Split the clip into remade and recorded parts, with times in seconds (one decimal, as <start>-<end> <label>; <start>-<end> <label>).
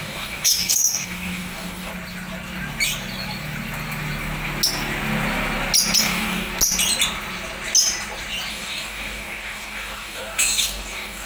0.0-1.9 remade; 1.9-6.0 recorded; 6.0-6.5 remade; 6.5-8.5 recorded; 8.5-11.3 remade